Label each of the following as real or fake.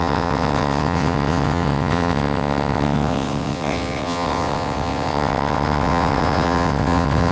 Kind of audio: fake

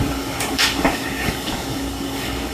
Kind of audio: fake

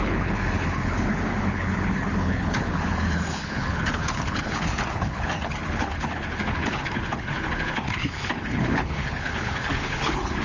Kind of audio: fake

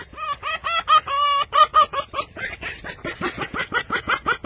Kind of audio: real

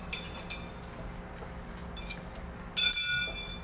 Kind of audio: real